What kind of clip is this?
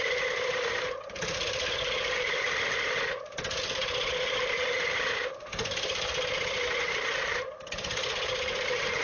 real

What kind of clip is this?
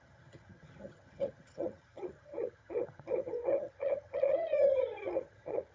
fake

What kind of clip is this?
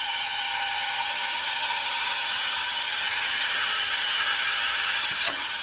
fake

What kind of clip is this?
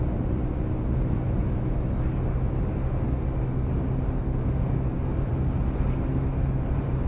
real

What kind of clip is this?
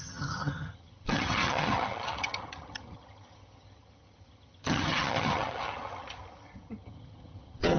fake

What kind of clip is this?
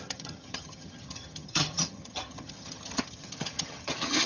fake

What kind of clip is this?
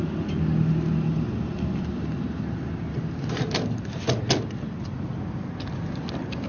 real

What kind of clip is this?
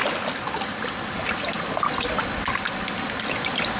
real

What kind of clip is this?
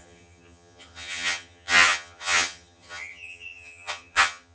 fake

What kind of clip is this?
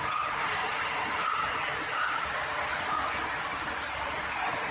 real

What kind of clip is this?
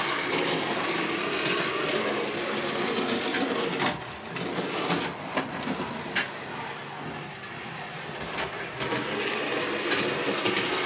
real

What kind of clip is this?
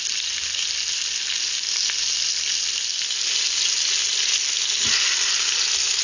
real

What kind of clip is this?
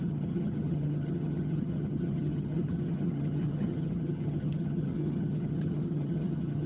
fake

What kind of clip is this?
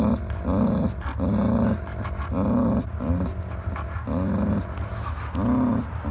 real